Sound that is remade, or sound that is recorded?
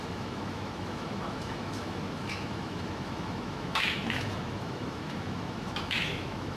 remade